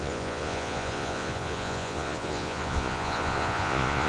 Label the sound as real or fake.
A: fake